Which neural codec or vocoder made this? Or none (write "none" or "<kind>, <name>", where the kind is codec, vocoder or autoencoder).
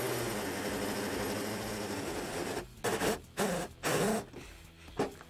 none